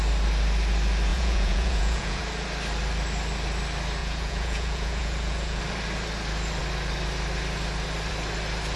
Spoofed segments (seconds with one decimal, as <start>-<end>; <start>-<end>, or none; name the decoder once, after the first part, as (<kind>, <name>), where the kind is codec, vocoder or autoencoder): 1.1-2.2 (vocoder, Vocos); 4.0-5.6